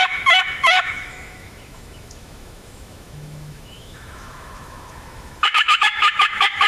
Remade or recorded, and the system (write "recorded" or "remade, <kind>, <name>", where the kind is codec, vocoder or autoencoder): remade, autoencoder, DAC-VAE